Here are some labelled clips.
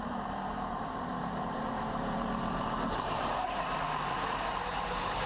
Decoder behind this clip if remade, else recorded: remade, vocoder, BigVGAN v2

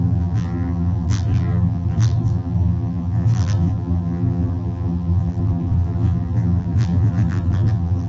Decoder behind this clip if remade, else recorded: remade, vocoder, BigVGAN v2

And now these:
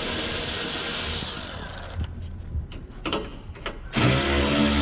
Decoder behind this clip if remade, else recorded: recorded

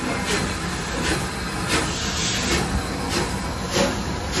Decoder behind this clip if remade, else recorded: recorded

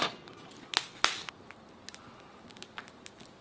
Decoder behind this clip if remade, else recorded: recorded